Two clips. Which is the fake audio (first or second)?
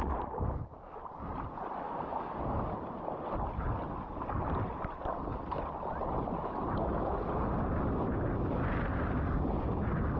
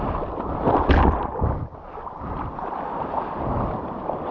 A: second